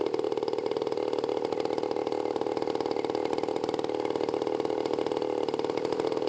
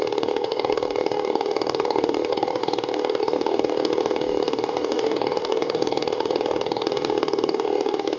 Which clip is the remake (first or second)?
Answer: second